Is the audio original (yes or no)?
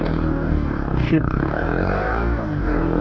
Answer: no